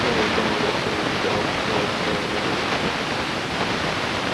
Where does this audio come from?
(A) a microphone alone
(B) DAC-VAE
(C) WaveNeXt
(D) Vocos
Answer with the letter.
A